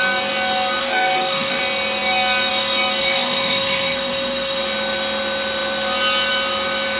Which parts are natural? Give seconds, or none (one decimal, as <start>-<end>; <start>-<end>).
0.0-0.8; 1.6-3.0; 4.6-7.0